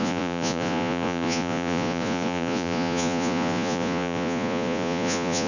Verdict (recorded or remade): remade